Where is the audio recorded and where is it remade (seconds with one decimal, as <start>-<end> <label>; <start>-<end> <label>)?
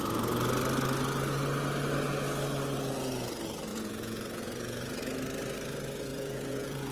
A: 0.0-3.7 recorded; 3.7-5.0 remade; 5.0-6.1 recorded; 6.1-6.9 remade